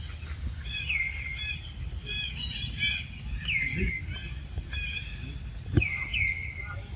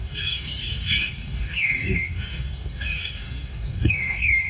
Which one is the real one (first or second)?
first